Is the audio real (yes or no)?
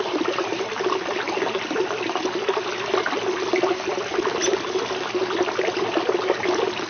yes